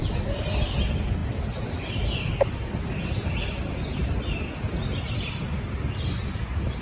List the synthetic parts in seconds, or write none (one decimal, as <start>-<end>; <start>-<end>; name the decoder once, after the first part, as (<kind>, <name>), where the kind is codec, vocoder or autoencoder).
none